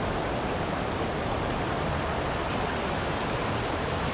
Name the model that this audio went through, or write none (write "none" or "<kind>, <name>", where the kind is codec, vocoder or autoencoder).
none